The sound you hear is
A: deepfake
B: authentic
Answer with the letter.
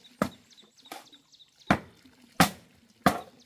B